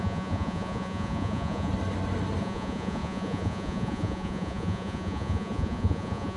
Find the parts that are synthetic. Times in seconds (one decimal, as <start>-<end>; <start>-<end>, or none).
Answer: 0.0-1.7; 2.4-6.4